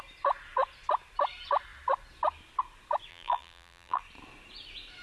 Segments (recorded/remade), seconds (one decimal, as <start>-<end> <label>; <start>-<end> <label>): 0.0-3.1 recorded; 3.1-4.0 remade; 4.0-5.0 recorded